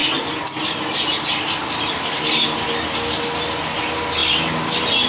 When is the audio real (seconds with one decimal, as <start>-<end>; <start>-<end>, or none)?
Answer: 0.0-5.1